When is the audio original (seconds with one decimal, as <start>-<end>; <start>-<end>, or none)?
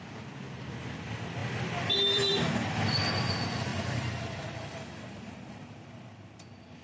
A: 0.0-1.4; 2.5-3.7